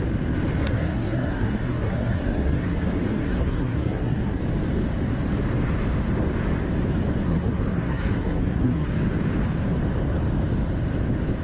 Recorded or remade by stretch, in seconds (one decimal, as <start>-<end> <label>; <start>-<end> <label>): 0.0-0.6 recorded; 0.6-4.4 remade; 4.4-7.2 recorded; 7.2-8.9 remade; 8.9-11.4 recorded